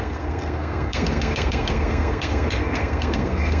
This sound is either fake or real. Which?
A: fake